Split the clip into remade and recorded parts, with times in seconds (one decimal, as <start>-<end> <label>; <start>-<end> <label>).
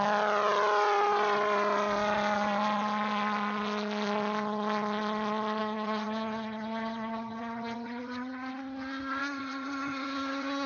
0.0-5.6 recorded; 5.6-8.5 remade; 8.5-9.2 recorded; 9.2-10.7 remade